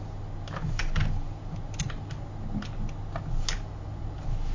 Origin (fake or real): real